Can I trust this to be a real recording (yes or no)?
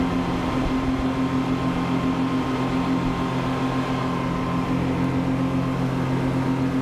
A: yes